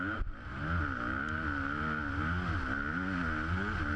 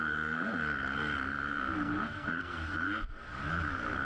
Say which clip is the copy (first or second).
second